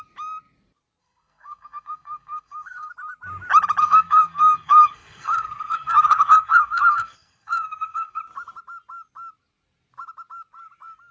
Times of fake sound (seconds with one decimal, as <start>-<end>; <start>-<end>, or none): 1.0-2.9; 3.8-8.2